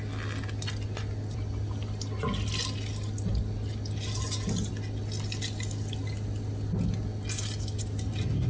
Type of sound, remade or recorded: recorded